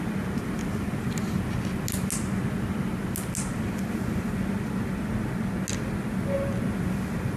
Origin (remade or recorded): recorded